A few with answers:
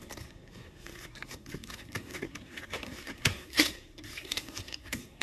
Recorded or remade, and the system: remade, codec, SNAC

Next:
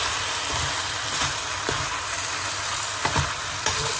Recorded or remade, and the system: remade, vocoder, BigVGAN v2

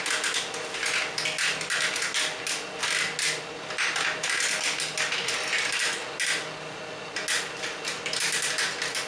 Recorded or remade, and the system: recorded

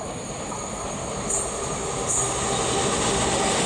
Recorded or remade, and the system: recorded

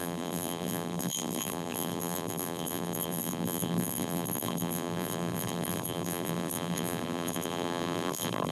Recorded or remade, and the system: remade, vocoder, BigVGAN v2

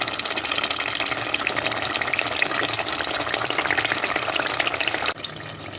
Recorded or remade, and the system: recorded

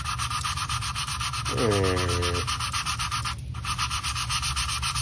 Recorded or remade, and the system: recorded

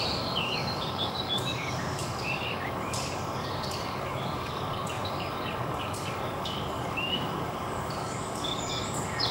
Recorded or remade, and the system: remade, codec, DAC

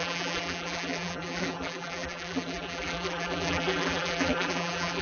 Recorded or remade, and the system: remade, vocoder, BigVGAN v2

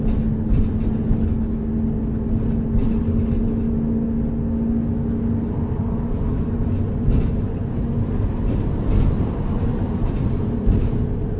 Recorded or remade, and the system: recorded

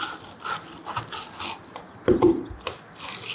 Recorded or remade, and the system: remade, vocoder, BigVGAN v2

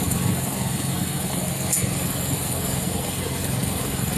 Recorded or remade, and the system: remade, codec, SNAC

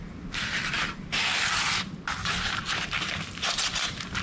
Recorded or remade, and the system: recorded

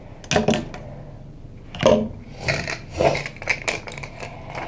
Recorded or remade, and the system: recorded